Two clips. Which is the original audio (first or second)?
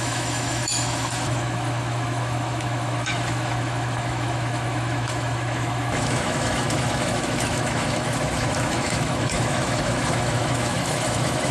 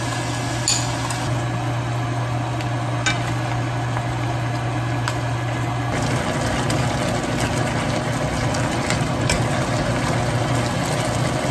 second